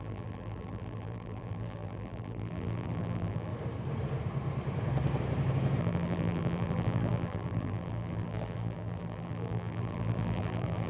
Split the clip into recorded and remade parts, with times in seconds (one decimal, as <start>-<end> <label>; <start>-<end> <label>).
0.0-3.5 remade; 3.5-5.8 recorded; 5.8-10.9 remade